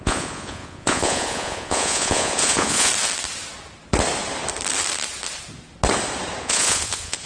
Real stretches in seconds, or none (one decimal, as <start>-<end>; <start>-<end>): 2.9-6.4